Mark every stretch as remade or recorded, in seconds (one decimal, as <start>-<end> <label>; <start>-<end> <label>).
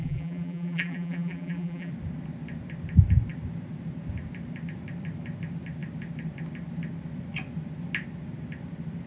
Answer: 0.0-1.9 remade; 1.9-9.1 recorded